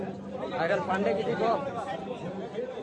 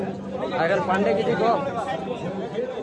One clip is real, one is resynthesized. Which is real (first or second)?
second